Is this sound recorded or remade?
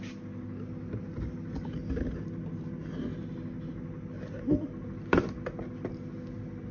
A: recorded